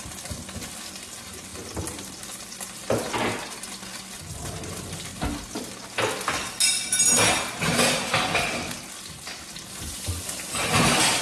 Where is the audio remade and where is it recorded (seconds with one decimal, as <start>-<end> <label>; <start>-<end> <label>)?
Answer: 0.0-11.2 recorded